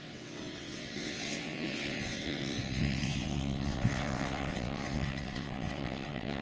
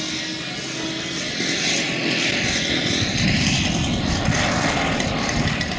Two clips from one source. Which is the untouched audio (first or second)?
second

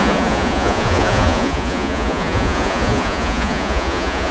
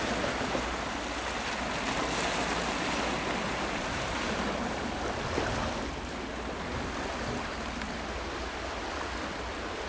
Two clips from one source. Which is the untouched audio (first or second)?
second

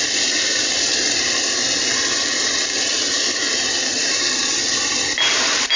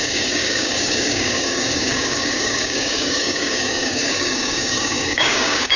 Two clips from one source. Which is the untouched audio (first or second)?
first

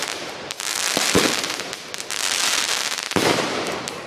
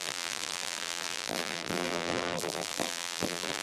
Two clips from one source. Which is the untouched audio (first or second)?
first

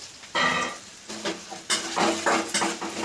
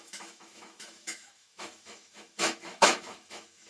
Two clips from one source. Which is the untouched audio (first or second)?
first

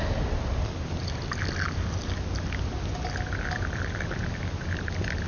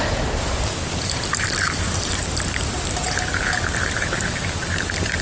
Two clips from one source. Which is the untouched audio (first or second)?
first